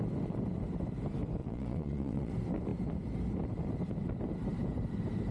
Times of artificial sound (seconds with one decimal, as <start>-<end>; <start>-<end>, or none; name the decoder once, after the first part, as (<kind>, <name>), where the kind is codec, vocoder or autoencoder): 1.4-2.3 (vocoder, Vocos)